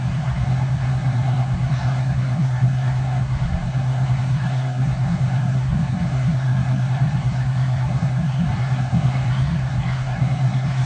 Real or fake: fake